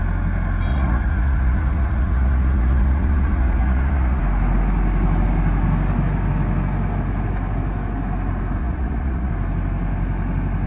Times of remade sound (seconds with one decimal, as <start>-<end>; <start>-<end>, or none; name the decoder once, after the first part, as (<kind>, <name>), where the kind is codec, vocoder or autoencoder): 0.7-4.2 (vocoder, Vocos); 8.6-9.3